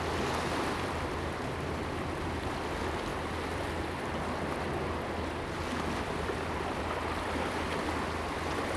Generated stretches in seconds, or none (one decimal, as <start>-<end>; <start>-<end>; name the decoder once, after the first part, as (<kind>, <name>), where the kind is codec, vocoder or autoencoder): none